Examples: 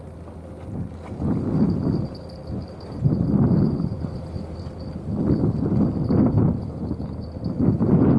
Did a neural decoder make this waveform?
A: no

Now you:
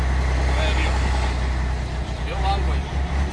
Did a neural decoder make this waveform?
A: no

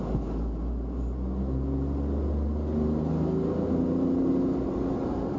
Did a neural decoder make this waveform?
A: no